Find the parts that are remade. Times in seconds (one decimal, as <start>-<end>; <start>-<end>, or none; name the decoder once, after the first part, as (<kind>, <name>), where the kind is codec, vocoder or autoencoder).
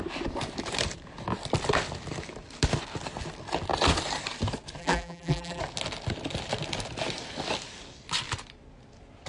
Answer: 4.8-5.6 (vocoder, BigVGAN v2)